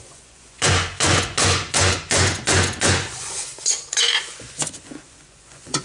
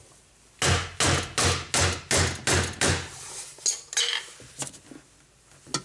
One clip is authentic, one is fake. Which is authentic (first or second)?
second